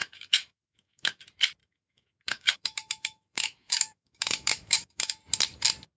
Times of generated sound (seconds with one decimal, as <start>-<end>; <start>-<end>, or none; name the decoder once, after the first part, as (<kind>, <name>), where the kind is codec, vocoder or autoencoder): 0.0-1.2 (autoencoder, DAC-VAE); 1.6-5.2